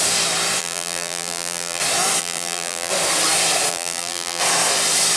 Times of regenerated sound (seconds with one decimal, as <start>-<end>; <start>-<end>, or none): 0.6-1.8; 2.2-2.9; 3.7-4.4